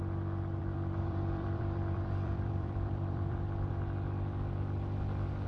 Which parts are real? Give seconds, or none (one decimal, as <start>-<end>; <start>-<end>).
0.0-0.6; 3.7-5.5